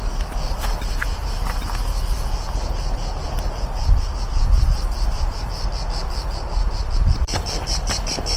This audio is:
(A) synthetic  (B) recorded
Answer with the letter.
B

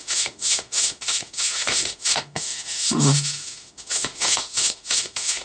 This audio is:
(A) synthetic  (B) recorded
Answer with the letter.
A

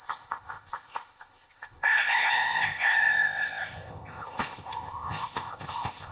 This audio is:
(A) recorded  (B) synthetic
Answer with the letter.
B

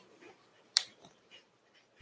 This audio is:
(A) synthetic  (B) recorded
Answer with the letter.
A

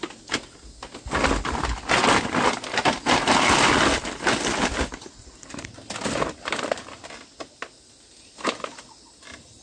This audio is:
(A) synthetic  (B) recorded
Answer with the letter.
B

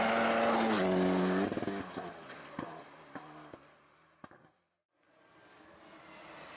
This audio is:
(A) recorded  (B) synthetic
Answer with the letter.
A